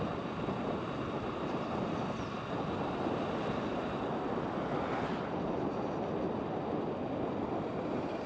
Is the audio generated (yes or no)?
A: no